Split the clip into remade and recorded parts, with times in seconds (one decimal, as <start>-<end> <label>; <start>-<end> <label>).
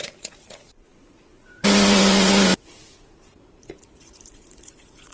0.0-5.1 remade